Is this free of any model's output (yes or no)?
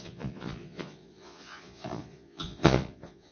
no